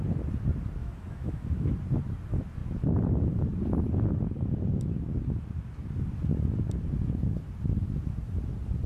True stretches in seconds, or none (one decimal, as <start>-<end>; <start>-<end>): 0.0-0.8; 1.7-8.9